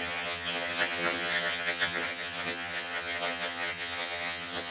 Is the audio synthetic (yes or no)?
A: yes